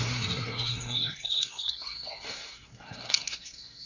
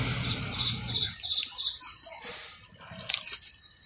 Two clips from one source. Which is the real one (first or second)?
second